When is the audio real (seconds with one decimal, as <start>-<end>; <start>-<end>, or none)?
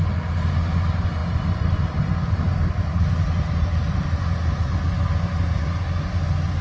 0.0-6.6